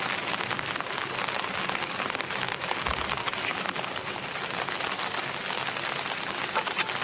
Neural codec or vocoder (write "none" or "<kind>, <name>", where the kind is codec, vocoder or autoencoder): none